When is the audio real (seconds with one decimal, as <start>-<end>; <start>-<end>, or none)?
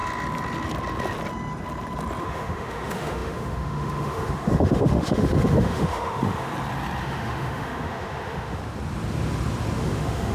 0.0-2.2; 6.5-7.0; 8.6-9.8